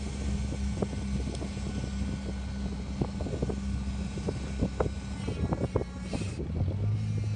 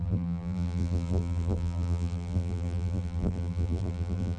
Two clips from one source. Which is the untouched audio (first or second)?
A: first